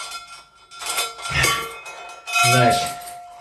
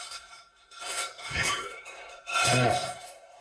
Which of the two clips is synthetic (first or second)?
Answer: second